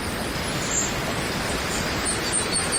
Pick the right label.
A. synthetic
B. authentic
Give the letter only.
B